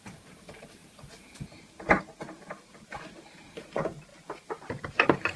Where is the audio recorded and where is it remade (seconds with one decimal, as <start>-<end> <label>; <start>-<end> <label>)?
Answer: 0.0-5.4 remade